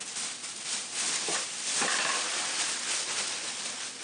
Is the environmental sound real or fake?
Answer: real